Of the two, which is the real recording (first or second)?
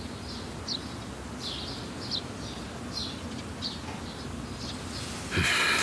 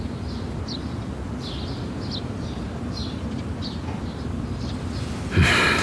first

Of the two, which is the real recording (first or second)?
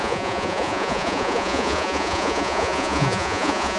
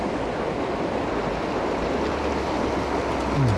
second